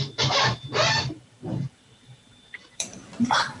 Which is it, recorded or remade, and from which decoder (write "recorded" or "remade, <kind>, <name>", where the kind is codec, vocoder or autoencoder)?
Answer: remade, vocoder, BigVGAN v2